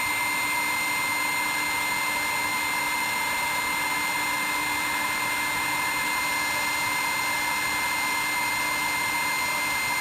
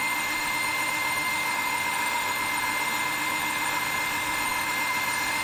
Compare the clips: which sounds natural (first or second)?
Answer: first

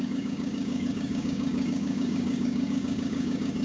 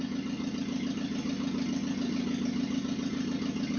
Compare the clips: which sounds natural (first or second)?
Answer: second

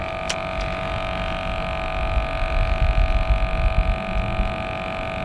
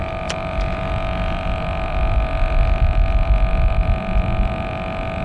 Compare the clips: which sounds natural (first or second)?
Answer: first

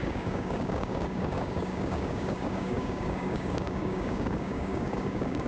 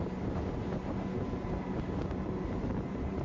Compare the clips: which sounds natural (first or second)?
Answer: second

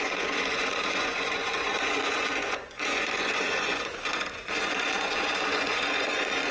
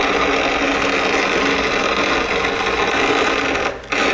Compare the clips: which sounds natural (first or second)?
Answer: second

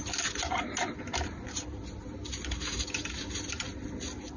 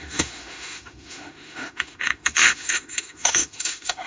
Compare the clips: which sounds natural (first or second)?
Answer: first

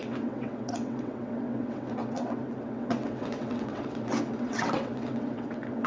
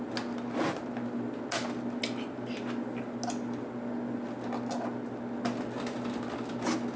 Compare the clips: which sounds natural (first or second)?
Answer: second